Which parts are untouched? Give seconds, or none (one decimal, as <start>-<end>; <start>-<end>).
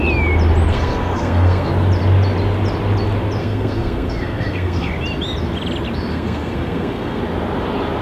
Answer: 0.0-0.7; 1.7-3.4; 4.9-6.1; 7.2-8.0